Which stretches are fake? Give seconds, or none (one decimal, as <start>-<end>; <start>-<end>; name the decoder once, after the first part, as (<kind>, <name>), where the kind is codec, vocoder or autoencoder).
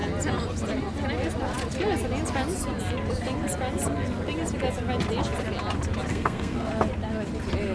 6.1-6.7 (codec, SNAC)